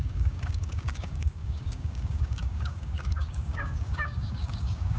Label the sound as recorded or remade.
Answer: remade